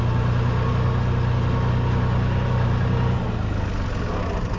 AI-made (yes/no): no